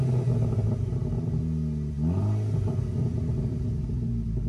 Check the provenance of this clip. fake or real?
real